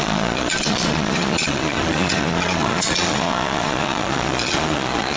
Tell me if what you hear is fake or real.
fake